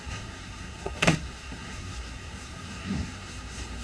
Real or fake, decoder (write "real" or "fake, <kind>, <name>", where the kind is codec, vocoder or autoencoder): fake, codec, SNAC